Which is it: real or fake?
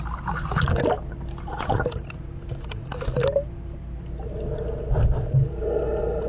real